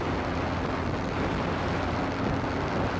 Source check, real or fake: real